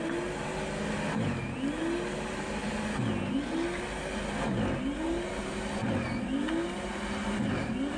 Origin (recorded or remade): recorded